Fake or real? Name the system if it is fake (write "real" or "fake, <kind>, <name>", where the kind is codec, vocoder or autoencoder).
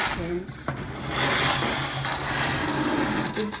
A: real